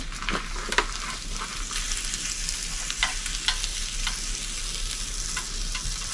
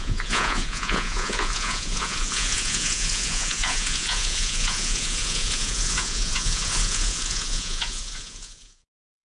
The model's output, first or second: second